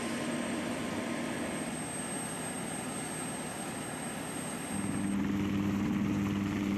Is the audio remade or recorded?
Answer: recorded